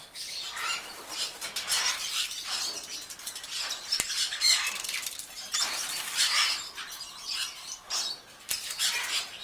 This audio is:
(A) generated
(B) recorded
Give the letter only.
A